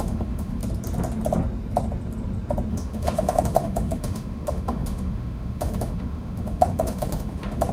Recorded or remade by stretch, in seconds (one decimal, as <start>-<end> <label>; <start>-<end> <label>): 0.0-0.6 remade; 0.6-2.7 recorded; 2.7-7.7 remade